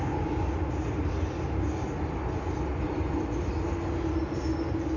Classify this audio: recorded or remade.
recorded